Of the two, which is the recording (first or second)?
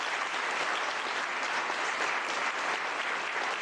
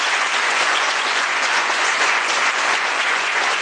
first